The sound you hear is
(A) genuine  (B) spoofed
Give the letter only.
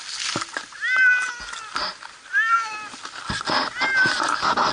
A